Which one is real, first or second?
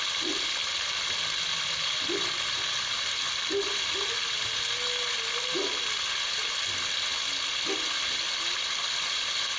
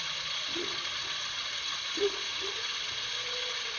first